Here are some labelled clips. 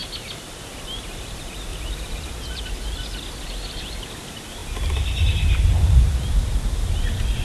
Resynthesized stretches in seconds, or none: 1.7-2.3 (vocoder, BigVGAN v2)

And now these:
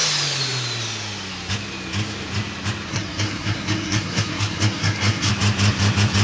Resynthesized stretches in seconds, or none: 2.9-5.3 (codec, SNAC)

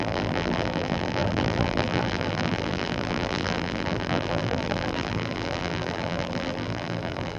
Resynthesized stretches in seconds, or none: 0.0-7.4 (vocoder, BigVGAN v2)

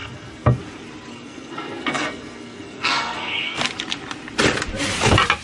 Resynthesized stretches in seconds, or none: 0.0-0.6 (codec, SNAC); 1.1-3.6

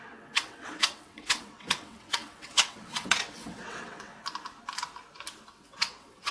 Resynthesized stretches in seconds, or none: 0.0-4.1 (vocoder, WaveNeXt); 5.5-6.3

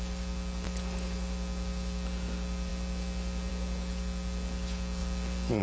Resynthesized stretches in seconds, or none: none

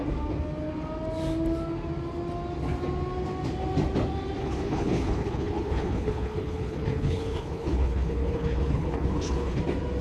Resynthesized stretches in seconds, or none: 4.4-9.6 (codec, HILCodec)

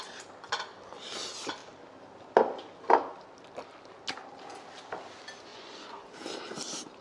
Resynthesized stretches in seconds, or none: 5.5-6.1 (vocoder, Vocos)